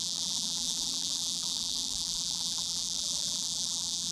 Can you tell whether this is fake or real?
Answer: fake